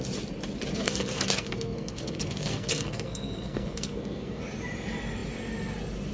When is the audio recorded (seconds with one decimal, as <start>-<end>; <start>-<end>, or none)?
0.0-0.7; 4.4-6.1